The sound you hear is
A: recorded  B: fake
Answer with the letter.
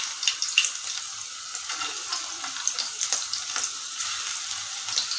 A